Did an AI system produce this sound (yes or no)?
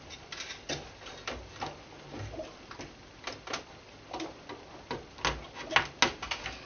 no